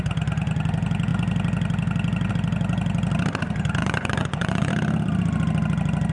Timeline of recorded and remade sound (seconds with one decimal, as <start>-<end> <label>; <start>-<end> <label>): 0.0-3.8 recorded; 3.8-4.7 remade; 4.7-6.1 recorded